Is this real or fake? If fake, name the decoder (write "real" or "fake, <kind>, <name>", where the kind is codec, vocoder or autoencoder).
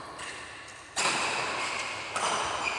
real